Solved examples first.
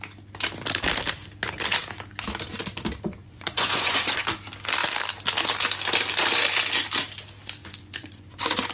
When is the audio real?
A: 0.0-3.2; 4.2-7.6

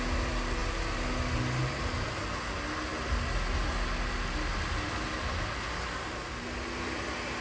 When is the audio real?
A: 0.0-7.4

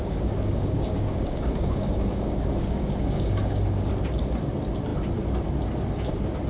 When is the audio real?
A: 3.9-6.5

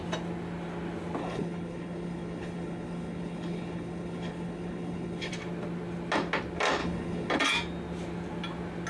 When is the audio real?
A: 0.0-1.2; 5.3-6.8; 7.3-8.9

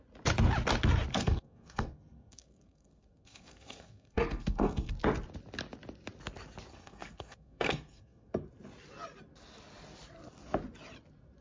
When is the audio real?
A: 0.0-1.1; 4.9-6.7; 8.3-11.4